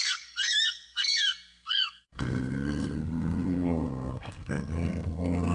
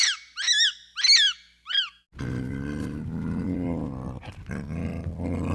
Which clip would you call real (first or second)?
second